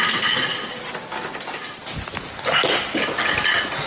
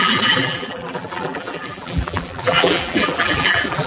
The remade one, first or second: second